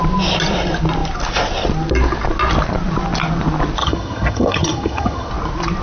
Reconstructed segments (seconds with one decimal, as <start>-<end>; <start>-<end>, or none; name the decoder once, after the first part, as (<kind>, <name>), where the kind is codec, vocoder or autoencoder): 3.8-5.3 (vocoder, HiFi-GAN)